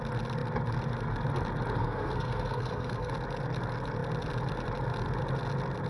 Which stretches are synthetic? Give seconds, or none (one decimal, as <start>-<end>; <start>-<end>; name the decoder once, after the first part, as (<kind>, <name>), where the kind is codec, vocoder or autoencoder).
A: 1.8-3.1 (codec, SNAC)